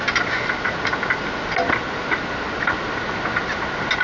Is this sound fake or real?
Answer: real